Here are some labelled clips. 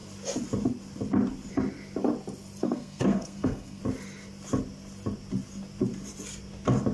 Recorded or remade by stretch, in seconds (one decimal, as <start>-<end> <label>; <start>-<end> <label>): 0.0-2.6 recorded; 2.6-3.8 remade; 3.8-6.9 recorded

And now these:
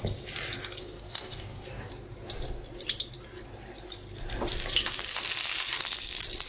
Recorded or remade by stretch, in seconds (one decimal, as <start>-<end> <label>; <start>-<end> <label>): 0.0-0.8 recorded; 0.8-1.9 remade; 1.9-6.5 recorded

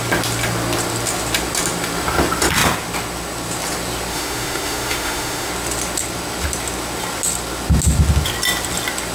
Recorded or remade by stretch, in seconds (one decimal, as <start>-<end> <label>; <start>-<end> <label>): 0.0-4.1 recorded; 4.1-5.5 remade; 5.5-9.1 recorded